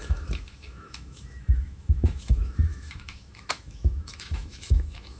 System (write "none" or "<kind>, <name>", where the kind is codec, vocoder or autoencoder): autoencoder, DAC-VAE